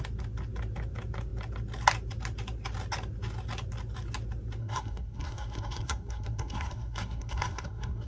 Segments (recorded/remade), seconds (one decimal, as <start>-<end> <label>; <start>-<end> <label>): 0.0-4.6 recorded; 4.6-8.1 remade